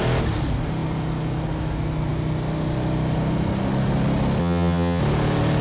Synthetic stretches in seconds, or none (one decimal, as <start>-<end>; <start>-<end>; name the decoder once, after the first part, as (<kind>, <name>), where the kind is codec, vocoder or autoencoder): 4.4-5.0 (vocoder, HiFi-GAN)